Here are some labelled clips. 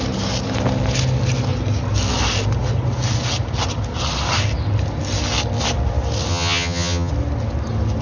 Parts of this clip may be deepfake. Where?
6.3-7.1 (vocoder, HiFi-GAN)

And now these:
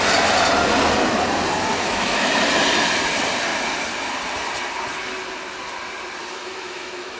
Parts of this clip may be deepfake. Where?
1.7-2.3 (autoencoder, DAC-VAE); 6.2-7.2

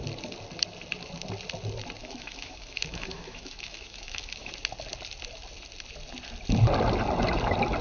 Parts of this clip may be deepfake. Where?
2.0-4.5 (autoencoder, DAC-VAE)

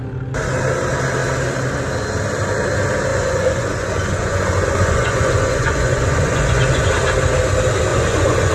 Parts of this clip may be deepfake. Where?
3.1-6.9 (vocoder, Vocos); 7.9-8.5

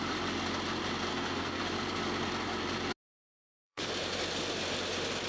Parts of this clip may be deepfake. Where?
1.1-1.6 (codec, SNAC); 3.3-3.9